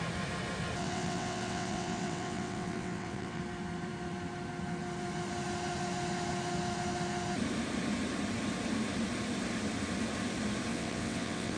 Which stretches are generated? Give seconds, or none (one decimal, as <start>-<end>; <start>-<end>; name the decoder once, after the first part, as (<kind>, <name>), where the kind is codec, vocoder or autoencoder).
0.8-3.4 (vocoder, WaveNeXt); 10.7-11.6

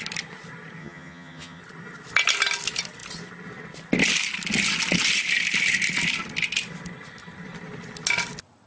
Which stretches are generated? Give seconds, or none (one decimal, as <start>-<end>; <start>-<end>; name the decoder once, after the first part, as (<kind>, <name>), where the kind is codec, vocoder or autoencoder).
0.8-1.6 (vocoder, HiFi-GAN)

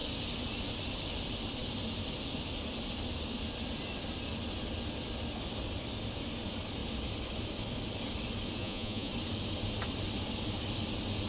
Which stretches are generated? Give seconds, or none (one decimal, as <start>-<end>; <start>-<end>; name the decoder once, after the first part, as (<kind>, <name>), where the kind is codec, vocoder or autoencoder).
8.6-9.1 (vocoder, Vocos)

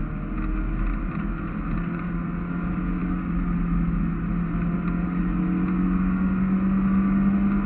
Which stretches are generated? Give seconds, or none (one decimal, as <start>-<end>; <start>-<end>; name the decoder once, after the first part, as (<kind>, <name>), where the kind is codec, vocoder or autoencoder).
none

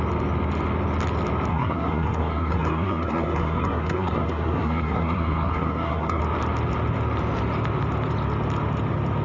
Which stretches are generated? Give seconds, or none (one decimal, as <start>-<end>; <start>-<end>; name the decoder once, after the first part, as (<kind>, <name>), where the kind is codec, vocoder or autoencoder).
1.5-6.2 (codec, SNAC)